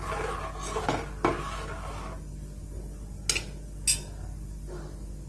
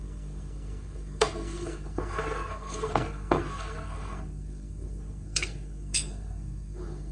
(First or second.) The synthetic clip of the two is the second